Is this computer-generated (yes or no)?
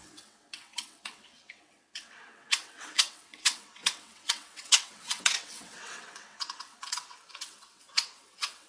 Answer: yes